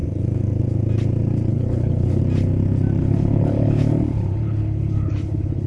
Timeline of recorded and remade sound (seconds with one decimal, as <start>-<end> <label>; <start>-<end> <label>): 0.0-1.5 recorded; 1.5-2.2 remade; 2.2-3.0 recorded; 3.0-5.7 remade